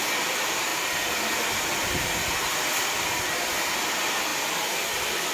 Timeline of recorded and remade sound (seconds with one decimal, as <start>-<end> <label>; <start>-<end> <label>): 0.0-0.7 recorded; 0.7-3.3 remade; 3.3-5.3 recorded